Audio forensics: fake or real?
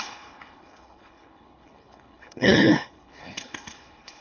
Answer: fake